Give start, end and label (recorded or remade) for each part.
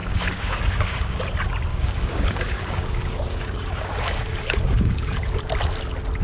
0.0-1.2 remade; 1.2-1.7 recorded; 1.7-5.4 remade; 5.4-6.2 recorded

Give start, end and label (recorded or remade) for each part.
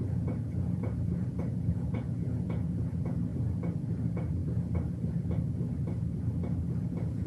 0.0-3.3 remade; 3.3-3.9 recorded; 3.9-4.4 remade; 4.4-6.7 recorded; 6.7-7.3 remade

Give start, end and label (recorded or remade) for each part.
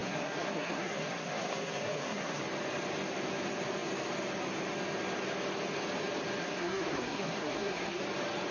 0.0-2.4 remade; 2.4-6.4 recorded; 6.4-8.0 remade; 8.0-8.5 recorded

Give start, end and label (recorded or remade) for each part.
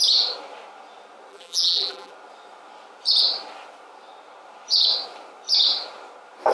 0.0-1.3 recorded; 1.3-2.1 remade; 2.1-6.5 recorded